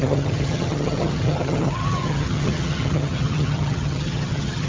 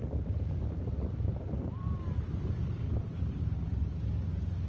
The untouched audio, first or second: second